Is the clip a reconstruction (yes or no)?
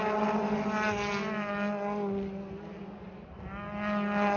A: no